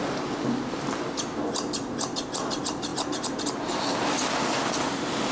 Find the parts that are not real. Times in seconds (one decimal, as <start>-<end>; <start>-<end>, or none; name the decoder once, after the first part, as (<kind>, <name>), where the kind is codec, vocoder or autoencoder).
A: none

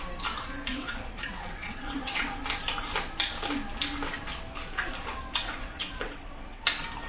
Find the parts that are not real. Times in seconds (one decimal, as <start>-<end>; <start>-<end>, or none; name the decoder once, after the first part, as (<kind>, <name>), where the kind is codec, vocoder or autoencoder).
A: 0.7-2.4 (vocoder, WaveNeXt); 5.4-6.6

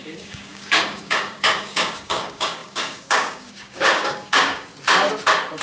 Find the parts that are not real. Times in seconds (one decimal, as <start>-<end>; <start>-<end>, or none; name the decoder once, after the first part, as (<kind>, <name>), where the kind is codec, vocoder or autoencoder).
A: 0.0-4.7 (codec, DAC)

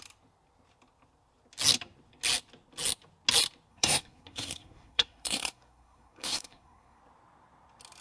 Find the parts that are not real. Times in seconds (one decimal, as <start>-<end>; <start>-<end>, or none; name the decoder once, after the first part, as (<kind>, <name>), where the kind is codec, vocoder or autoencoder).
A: 3.7-7.0 (codec, SNAC)

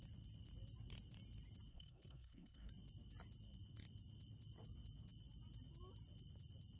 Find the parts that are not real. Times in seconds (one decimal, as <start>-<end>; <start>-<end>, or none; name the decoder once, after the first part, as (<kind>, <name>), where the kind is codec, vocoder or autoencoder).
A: 1.7-2.7 (codec, SNAC)